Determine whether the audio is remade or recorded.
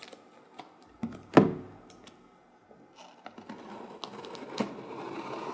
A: recorded